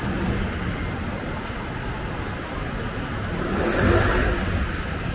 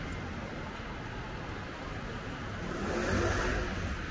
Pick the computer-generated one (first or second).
first